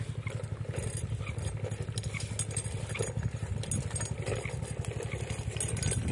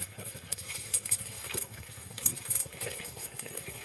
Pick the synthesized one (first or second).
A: second